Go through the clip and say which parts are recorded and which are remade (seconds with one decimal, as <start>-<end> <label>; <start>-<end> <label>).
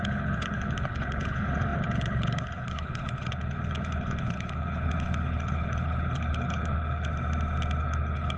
0.0-7.1 remade; 7.1-7.8 recorded; 7.8-8.4 remade